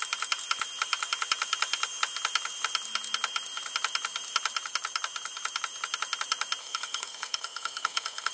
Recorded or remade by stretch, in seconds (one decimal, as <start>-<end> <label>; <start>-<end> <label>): 0.0-6.6 recorded; 6.6-8.3 remade